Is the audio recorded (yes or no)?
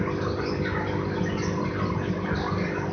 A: yes